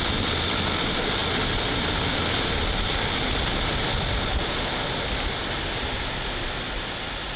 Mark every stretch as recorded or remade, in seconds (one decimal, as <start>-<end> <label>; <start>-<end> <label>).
0.0-7.4 recorded